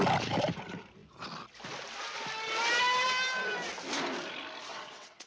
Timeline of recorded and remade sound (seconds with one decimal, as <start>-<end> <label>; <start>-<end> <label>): 0.0-4.7 recorded; 4.7-5.3 remade